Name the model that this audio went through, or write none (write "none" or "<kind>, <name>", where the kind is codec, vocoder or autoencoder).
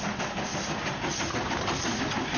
none